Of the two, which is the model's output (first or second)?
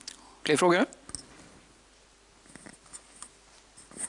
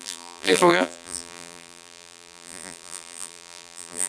second